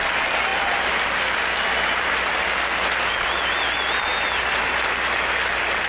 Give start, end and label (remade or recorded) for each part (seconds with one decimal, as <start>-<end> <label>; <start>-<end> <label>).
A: 0.0-5.9 recorded